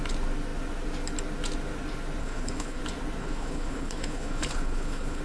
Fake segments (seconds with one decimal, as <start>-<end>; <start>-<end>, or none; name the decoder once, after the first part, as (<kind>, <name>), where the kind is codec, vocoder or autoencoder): 2.2-2.8 (codec, HILCodec); 3.2-5.2